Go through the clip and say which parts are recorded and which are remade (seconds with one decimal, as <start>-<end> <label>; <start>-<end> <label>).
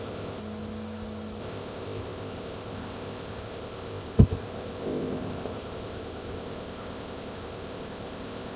0.0-0.4 remade; 0.4-1.4 recorded; 1.4-8.6 remade